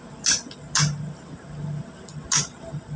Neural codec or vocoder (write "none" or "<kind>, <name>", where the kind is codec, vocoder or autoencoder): none